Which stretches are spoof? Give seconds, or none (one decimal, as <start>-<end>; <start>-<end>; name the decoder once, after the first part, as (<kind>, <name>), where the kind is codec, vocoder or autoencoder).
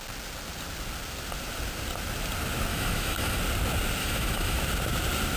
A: 2.7-3.4 (autoencoder, DAC-VAE); 4.0-4.6